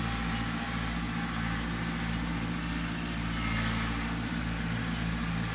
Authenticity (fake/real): real